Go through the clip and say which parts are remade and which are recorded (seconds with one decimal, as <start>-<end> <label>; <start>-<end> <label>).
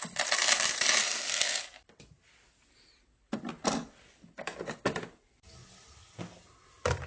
0.0-1.0 recorded; 1.0-1.6 remade; 1.6-7.1 recorded